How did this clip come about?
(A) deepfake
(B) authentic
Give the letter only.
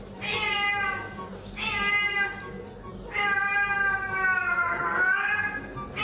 B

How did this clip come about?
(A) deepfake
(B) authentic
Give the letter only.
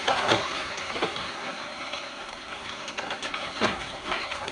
A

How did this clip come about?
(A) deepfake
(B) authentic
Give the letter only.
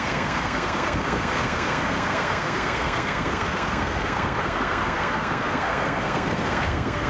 A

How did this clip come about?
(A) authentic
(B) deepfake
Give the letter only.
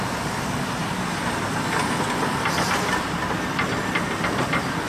A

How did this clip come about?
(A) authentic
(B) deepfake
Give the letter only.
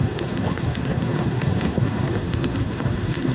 B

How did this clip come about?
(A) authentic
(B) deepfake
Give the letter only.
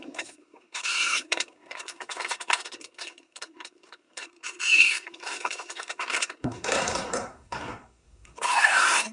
B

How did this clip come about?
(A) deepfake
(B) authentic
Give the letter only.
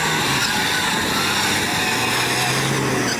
B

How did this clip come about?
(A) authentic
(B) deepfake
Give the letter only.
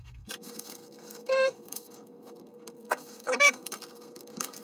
B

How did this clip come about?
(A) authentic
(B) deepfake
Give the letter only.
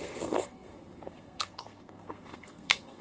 B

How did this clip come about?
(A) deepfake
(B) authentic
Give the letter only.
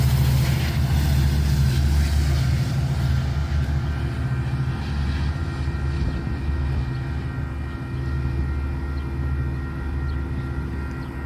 B